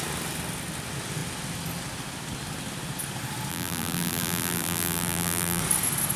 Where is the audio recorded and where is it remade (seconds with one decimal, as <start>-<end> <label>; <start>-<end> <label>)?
0.0-3.5 recorded; 3.5-5.6 remade; 5.6-6.2 recorded